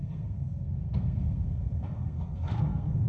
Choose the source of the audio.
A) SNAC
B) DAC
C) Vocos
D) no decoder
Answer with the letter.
A